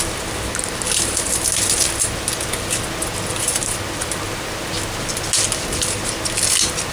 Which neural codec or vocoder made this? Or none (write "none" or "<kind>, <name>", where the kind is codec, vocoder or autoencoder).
none